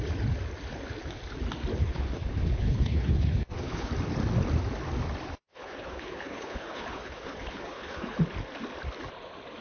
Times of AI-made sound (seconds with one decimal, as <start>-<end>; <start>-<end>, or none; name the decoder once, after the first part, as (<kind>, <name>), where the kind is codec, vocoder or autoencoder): 1.8-3.9 (codec, HILCodec); 5.5-8.2